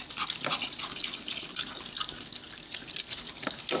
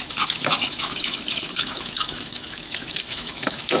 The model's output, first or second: second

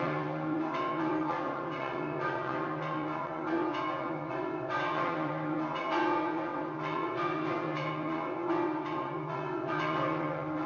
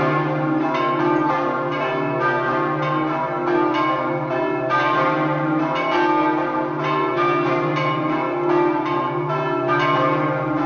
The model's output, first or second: first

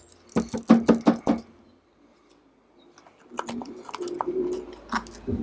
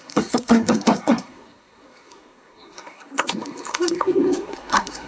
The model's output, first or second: second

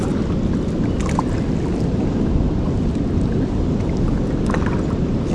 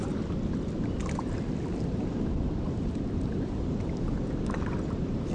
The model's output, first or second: second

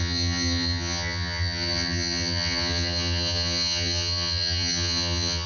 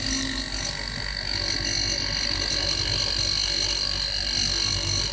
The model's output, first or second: first